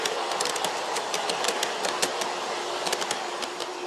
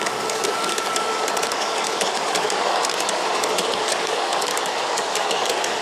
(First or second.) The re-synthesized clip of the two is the second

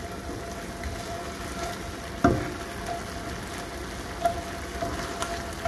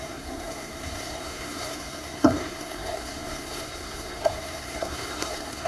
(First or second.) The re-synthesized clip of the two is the second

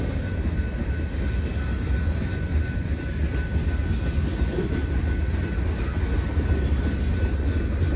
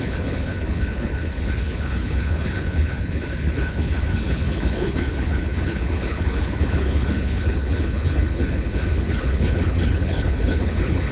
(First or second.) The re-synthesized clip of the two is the second